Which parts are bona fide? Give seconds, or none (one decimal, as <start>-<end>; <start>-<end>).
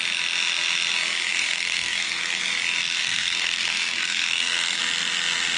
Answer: 0.0-1.3; 2.4-3.0; 4.8-5.6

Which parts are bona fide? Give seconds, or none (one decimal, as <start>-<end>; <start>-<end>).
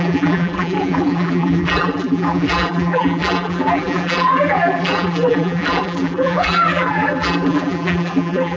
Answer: none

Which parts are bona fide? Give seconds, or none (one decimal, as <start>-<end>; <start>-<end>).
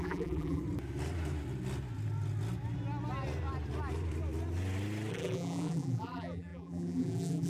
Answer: 0.6-5.1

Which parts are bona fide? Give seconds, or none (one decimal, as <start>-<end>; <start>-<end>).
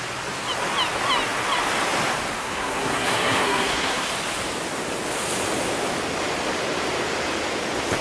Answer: 0.0-2.4; 4.1-8.0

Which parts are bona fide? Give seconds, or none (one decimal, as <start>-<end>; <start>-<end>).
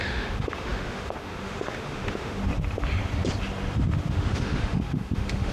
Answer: 2.4-4.1